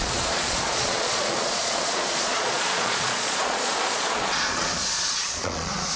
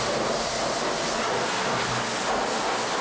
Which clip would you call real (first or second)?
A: second